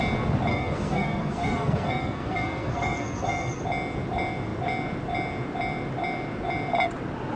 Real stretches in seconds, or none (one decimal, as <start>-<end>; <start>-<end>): 0.0-0.5; 3.6-7.4